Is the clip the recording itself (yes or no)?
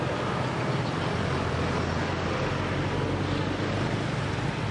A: yes